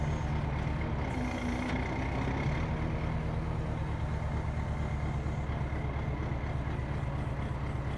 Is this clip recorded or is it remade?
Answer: recorded